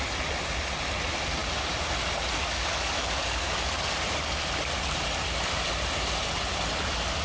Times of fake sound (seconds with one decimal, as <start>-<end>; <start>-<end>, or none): 2.4-3.7

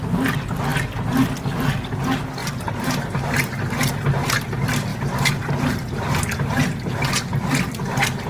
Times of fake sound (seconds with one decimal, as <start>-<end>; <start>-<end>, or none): 2.4-3.9; 4.9-5.5

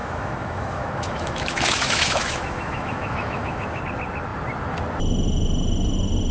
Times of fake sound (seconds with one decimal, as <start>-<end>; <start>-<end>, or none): 0.0-3.8